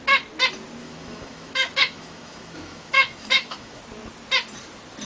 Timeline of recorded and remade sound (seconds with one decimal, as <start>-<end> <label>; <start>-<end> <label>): 0.0-0.8 recorded; 0.8-3.8 remade; 3.8-5.0 recorded